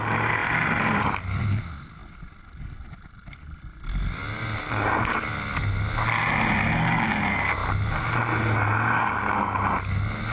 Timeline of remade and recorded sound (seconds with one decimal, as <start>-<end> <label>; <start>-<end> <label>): 0.0-0.4 recorded; 0.4-1.6 remade; 1.6-10.3 recorded